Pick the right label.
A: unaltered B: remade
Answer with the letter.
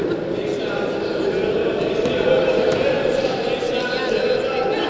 A